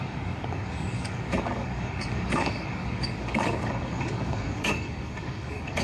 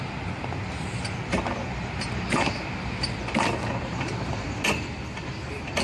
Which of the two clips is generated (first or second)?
first